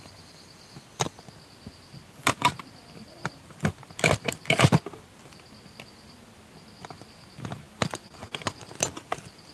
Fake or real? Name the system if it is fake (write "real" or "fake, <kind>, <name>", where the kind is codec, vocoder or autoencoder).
real